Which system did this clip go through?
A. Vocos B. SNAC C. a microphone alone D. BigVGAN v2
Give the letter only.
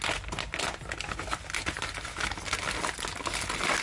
C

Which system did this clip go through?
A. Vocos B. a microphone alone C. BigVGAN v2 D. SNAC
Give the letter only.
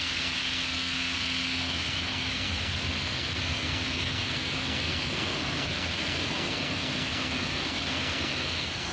D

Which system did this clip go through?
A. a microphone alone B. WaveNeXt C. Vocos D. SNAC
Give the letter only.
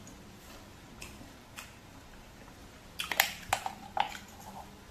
A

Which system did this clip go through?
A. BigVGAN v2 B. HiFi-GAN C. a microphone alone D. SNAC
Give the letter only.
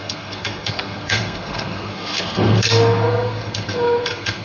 D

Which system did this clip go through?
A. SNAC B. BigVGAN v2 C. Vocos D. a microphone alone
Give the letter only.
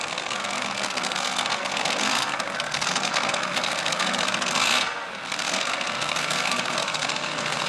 A